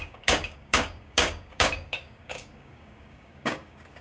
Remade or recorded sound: remade